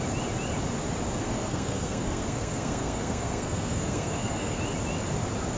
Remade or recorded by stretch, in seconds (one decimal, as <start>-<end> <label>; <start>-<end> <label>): 0.0-1.2 recorded; 1.2-4.6 remade; 4.6-5.6 recorded